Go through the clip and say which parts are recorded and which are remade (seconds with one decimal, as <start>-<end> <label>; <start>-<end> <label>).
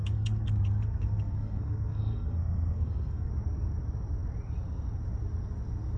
0.0-3.3 remade; 3.3-6.0 recorded